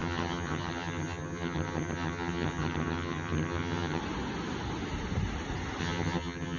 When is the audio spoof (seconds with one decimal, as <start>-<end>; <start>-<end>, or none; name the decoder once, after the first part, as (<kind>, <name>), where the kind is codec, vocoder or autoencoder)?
0.0-4.0 (vocoder, HiFi-GAN); 5.8-6.6